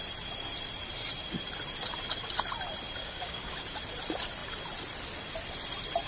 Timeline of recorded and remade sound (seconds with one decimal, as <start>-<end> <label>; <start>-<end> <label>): 0.0-3.0 recorded; 3.0-3.6 remade; 3.6-6.1 recorded